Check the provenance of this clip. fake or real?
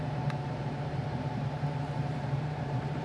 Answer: fake